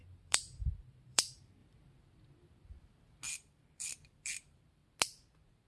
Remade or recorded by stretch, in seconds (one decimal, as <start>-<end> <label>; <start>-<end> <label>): 0.0-1.6 remade; 1.6-3.3 recorded; 3.3-4.8 remade; 4.8-5.7 recorded